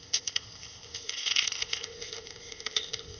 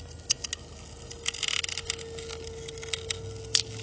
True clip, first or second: second